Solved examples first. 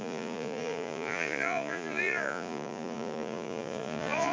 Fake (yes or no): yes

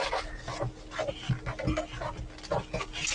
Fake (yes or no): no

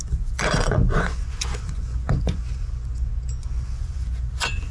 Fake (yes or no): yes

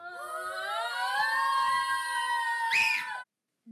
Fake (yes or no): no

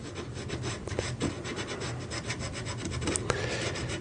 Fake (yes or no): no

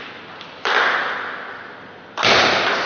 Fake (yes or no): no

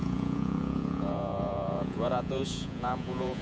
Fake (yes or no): yes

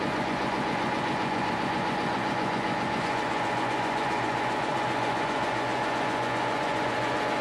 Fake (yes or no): yes